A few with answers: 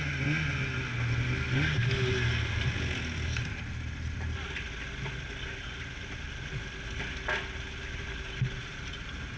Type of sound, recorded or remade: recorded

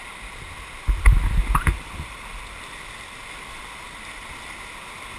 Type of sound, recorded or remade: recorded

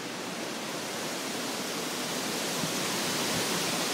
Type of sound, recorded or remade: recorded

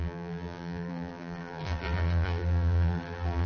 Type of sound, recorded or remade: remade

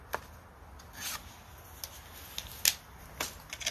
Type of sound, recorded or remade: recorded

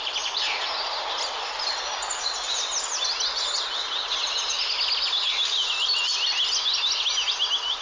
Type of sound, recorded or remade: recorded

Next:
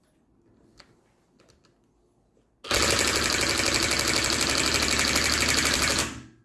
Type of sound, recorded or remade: recorded